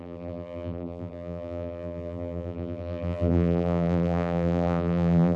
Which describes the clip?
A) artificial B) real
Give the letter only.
A